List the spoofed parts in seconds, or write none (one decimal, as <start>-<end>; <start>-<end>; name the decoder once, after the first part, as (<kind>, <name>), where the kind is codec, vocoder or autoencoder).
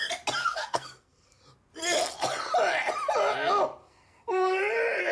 0.4-1.4 (codec, SNAC); 3.8-4.6